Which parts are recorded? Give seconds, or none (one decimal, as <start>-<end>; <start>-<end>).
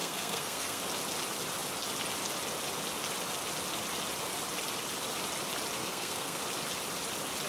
0.8-5.8; 6.4-7.5